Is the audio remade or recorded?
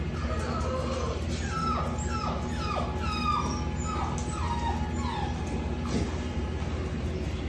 recorded